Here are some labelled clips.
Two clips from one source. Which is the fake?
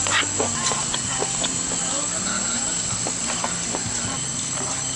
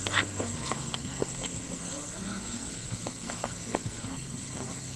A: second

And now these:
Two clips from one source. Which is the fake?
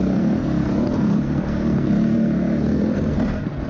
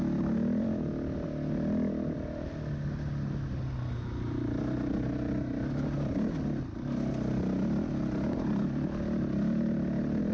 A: first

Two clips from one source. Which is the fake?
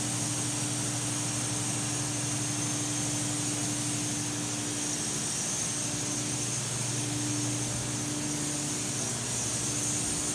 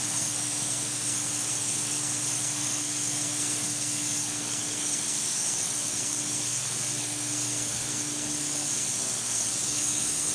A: second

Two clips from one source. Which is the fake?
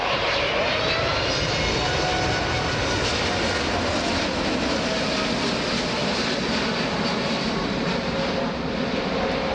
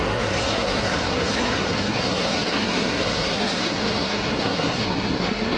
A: second